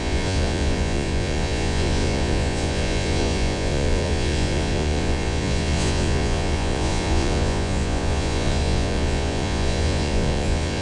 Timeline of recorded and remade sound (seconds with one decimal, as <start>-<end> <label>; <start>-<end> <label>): 0.0-10.8 remade